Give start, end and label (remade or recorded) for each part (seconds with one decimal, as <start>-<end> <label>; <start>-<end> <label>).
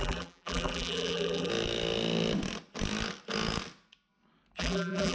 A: 0.0-1.5 remade; 1.5-4.6 recorded; 4.6-5.1 remade